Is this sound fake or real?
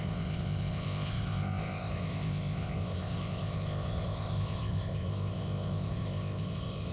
fake